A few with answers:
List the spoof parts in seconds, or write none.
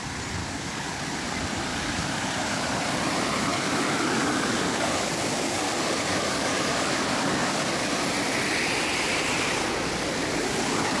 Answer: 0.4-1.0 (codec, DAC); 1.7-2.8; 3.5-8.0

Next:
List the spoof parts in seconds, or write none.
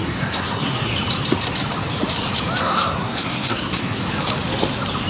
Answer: 0.0-0.9 (codec, SNAC); 2.6-4.0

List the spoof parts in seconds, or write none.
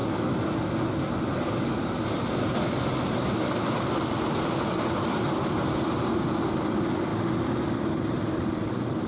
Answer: none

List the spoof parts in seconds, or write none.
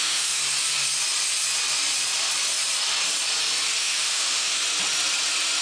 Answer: 0.0-0.4 (autoencoder, DAC-VAE); 3.8-4.6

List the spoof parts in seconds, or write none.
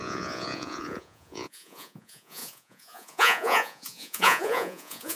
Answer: 0.0-5.2 (vocoder, Vocos)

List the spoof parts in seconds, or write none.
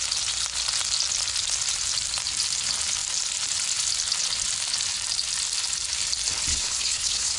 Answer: 6.5-7.4 (codec, HILCodec)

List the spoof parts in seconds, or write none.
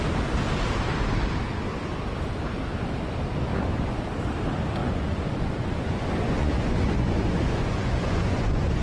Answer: 3.5-4.0 (vocoder, Vocos); 4.8-8.8